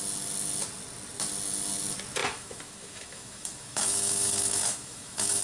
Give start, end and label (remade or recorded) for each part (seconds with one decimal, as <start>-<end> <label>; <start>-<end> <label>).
0.0-2.2 recorded; 2.2-5.4 remade